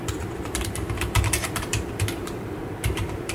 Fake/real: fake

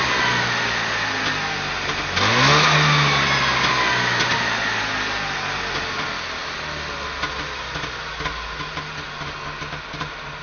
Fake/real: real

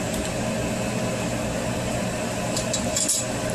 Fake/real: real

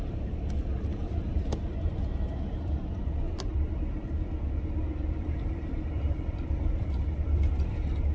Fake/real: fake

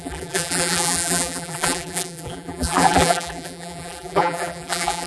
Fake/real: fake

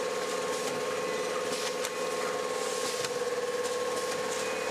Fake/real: real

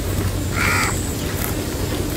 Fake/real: real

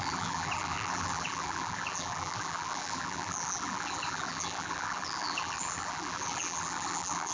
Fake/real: fake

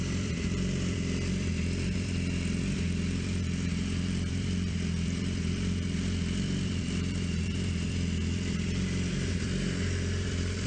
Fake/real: fake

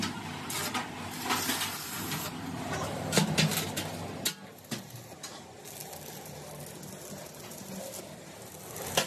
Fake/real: real